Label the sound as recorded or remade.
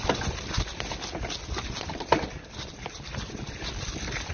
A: recorded